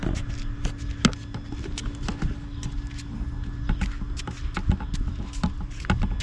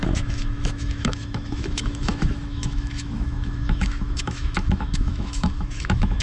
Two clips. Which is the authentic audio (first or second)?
first